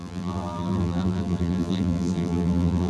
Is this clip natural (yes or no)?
no